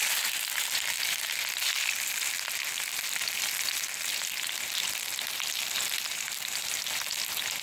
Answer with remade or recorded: recorded